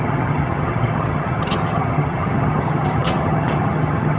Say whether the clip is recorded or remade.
remade